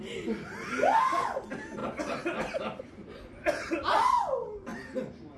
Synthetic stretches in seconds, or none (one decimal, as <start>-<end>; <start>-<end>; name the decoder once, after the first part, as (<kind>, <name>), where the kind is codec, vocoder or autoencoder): none